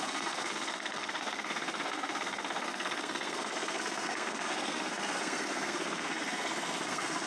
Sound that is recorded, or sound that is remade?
remade